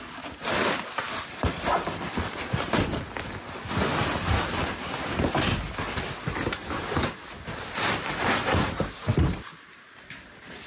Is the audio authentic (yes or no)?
yes